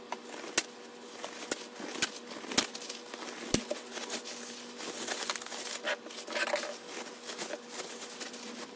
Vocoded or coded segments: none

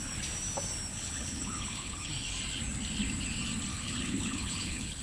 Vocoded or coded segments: 0.9-2.1 (codec, HILCodec); 3.7-5.0

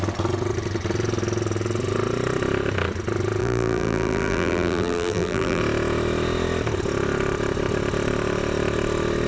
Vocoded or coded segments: 3.4-5.6 (vocoder, BigVGAN v2)

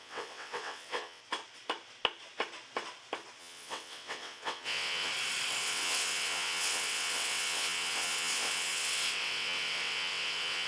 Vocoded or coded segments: 0.0-1.2 (vocoder, WaveNeXt); 3.4-5.1; 5.6-10.7

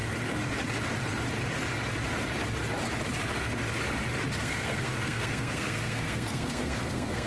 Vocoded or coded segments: 4.4-7.3 (codec, SNAC)

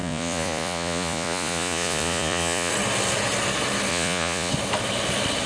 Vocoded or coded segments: 0.0-2.7 (vocoder, Vocos); 3.9-4.5

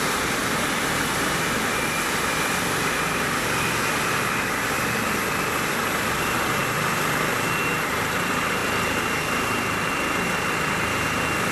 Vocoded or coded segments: 0.0-11.5 (vocoder, BigVGAN v2)